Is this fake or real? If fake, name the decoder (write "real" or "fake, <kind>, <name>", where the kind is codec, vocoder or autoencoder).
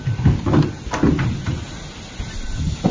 real